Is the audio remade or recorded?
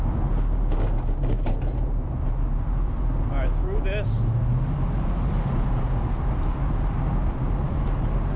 recorded